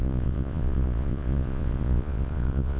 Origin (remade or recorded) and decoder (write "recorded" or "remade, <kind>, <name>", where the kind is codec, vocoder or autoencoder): remade, vocoder, Vocos